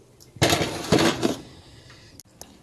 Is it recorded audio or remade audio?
recorded